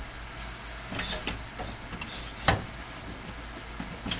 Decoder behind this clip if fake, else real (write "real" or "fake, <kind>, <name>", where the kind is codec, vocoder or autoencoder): real